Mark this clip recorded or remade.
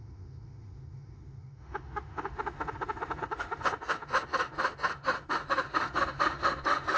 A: remade